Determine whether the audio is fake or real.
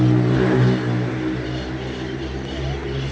real